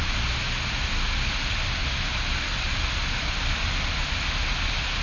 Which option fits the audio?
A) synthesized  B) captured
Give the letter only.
B